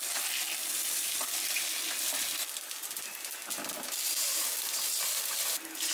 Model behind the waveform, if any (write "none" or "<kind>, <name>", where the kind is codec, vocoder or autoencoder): none